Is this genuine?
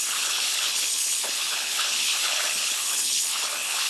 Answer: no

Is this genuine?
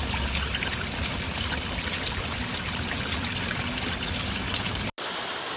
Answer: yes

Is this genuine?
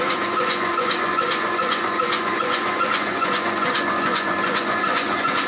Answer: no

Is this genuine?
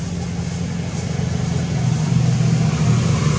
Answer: yes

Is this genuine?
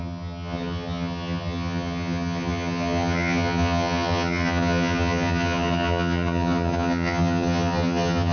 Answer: no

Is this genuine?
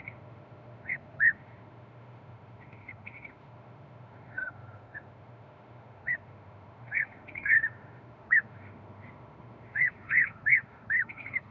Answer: no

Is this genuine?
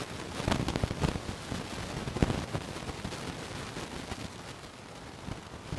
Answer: yes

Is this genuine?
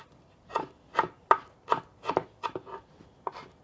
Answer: yes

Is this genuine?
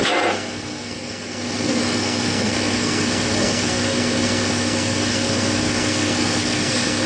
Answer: no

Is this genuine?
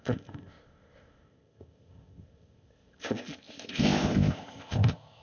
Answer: no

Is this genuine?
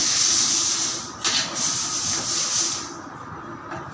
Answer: yes